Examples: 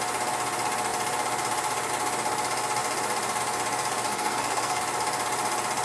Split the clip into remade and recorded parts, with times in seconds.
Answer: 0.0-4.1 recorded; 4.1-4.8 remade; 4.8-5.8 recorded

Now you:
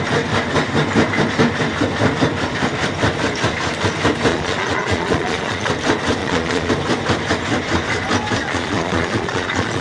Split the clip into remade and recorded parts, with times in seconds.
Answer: 0.0-4.3 recorded; 4.3-5.7 remade; 5.7-6.2 recorded; 6.2-6.7 remade; 6.7-8.4 recorded; 8.4-9.8 remade

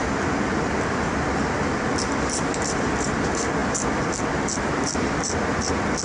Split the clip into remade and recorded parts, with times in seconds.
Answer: 0.0-6.0 remade

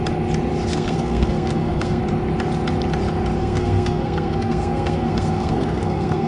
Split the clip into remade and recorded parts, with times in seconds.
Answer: 0.0-0.7 recorded; 0.7-2.0 remade; 2.0-3.4 recorded; 3.4-6.3 remade

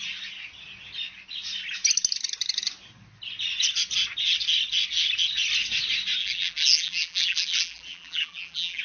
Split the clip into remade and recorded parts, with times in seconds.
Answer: 0.0-6.2 recorded; 6.2-8.8 remade

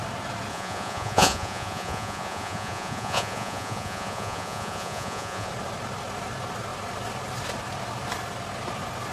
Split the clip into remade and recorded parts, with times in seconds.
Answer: 0.0-0.5 recorded; 0.5-5.5 remade; 5.5-9.1 recorded

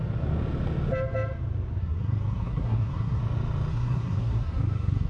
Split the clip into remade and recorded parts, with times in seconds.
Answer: 0.0-1.8 recorded; 1.8-3.2 remade; 3.2-3.7 recorded; 3.7-5.1 remade

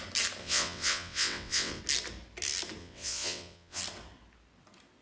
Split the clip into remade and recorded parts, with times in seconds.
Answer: 0.0-0.4 recorded; 0.4-1.8 remade; 1.8-2.8 recorded; 2.8-3.8 remade; 3.8-5.0 recorded